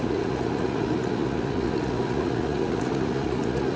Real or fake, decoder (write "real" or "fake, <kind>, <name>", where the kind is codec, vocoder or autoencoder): fake, vocoder, Vocos